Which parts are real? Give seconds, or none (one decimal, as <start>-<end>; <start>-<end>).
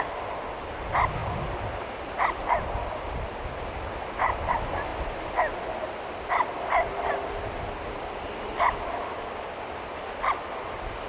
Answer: 0.0-11.1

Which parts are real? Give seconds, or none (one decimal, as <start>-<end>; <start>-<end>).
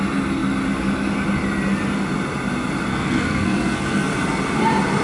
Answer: 0.0-2.9; 4.1-5.0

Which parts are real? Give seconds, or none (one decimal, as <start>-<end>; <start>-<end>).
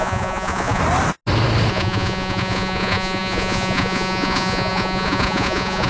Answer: 0.8-1.7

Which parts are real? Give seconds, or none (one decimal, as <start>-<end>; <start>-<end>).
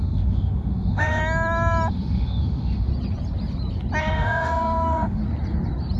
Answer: 1.2-1.9; 2.9-4.0; 5.2-6.0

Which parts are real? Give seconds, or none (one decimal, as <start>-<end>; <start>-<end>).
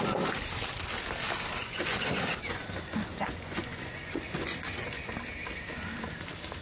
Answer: 0.0-1.6; 5.1-6.6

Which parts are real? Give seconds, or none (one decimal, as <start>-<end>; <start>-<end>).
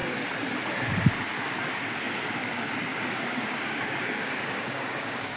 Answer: 0.0-3.0